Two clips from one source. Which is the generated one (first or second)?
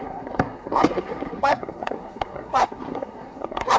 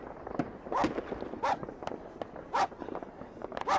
first